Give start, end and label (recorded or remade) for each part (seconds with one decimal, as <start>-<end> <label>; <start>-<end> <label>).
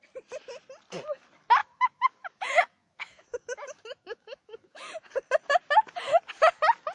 0.0-1.6 recorded; 1.6-5.1 remade; 5.1-6.9 recorded